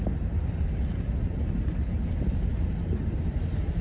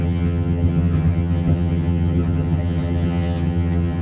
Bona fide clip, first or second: first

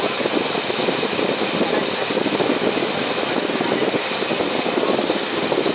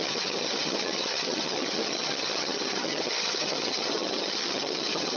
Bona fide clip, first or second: first